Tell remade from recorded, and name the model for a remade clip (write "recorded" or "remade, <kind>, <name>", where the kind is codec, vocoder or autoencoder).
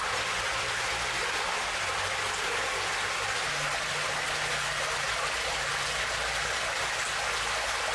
recorded